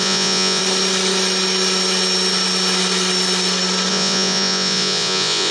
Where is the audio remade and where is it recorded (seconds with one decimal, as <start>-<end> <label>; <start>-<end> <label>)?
0.0-0.6 remade; 0.6-3.9 recorded; 3.9-5.5 remade